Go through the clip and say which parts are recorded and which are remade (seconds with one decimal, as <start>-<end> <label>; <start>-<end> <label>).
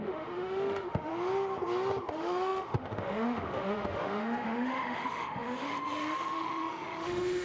0.0-1.1 remade; 1.1-2.1 recorded; 2.1-7.4 remade